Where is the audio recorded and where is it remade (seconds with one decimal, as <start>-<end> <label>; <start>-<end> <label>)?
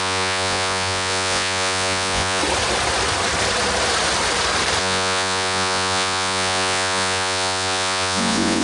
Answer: 0.0-2.4 remade; 2.4-4.8 recorded; 4.8-8.6 remade